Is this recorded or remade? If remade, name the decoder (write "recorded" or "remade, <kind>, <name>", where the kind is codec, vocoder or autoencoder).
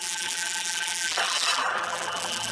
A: remade, vocoder, BigVGAN v2